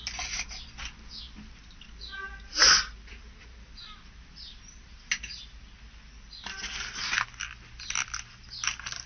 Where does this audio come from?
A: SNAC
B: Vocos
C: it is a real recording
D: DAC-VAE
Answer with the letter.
C